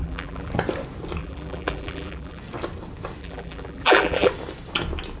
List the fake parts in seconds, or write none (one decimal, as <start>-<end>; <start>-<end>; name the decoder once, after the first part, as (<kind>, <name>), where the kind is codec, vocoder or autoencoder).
0.0-0.5 (vocoder, BigVGAN v2); 1.2-2.4; 3.2-4.3